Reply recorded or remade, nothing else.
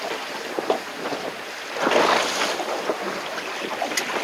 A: recorded